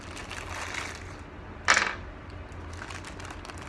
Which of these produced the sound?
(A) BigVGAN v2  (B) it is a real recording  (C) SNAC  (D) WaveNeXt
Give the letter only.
B